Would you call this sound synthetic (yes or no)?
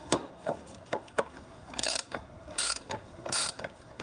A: yes